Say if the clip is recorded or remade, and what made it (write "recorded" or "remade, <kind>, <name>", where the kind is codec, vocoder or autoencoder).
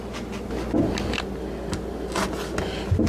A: recorded